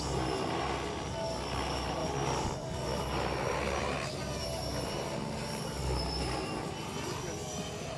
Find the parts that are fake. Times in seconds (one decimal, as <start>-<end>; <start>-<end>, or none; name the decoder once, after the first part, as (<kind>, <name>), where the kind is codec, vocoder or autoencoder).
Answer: none